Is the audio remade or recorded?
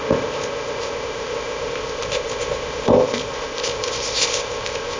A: remade